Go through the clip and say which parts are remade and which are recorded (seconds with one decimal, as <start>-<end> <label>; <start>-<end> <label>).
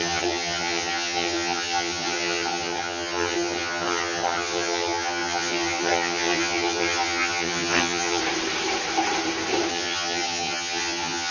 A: 0.0-8.2 remade; 8.2-9.7 recorded; 9.7-11.3 remade